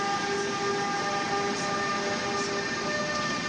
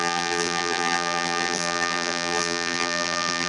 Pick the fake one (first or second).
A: second